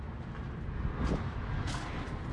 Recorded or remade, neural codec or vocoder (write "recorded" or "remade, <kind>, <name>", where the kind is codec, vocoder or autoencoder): recorded